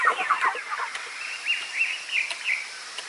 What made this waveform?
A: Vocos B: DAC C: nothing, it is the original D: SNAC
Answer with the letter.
C